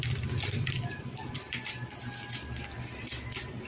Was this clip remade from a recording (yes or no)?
yes